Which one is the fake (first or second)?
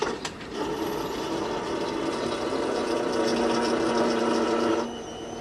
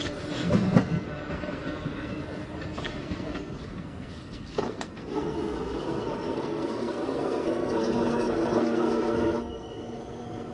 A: second